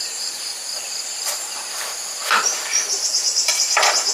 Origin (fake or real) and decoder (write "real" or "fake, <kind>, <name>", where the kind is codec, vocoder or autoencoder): fake, vocoder, BigVGAN v2